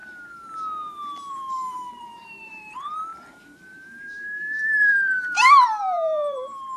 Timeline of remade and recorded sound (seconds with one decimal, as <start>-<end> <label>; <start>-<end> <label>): 0.0-1.3 recorded; 1.3-6.8 remade